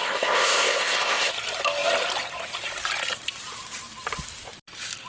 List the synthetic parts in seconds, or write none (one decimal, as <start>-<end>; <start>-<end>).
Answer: 0.0-1.3